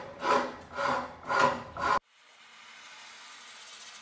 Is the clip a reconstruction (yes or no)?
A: no